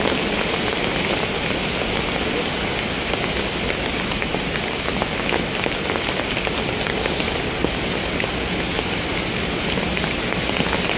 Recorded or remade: recorded